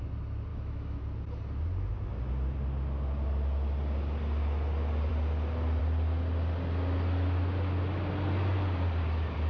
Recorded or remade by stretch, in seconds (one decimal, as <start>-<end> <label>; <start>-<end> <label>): 0.0-0.5 recorded; 0.5-1.0 remade; 1.0-9.5 recorded